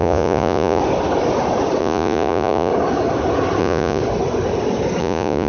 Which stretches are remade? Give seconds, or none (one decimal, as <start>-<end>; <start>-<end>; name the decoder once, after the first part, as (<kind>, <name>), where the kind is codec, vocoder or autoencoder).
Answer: 0.0-0.8 (vocoder, Vocos); 1.8-2.7; 3.6-4.0; 5.0-5.5